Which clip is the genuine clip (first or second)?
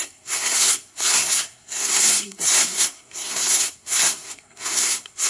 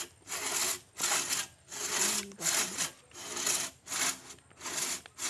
second